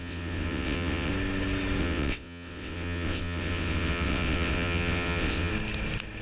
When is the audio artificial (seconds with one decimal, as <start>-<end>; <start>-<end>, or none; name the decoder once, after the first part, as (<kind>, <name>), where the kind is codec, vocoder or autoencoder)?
0.0-1.1 (vocoder, WaveNeXt); 1.8-5.5